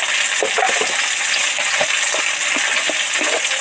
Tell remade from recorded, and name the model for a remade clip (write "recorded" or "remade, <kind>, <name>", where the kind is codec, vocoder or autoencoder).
recorded